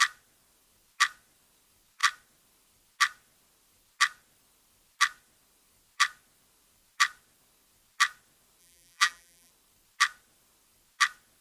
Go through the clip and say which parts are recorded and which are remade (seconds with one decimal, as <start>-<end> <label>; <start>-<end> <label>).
0.0-8.6 recorded; 8.6-9.5 remade; 9.5-11.4 recorded